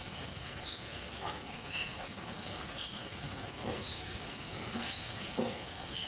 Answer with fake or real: fake